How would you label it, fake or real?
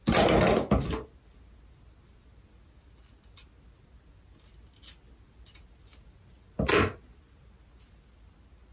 real